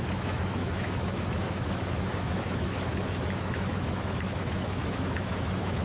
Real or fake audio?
fake